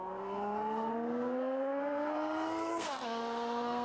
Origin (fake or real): fake